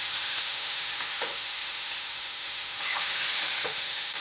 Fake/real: fake